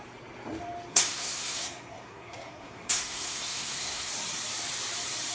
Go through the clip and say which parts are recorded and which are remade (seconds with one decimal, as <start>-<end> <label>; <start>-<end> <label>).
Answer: 0.0-0.9 recorded; 0.9-4.1 remade; 4.1-5.3 recorded